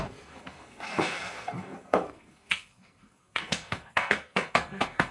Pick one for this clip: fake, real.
fake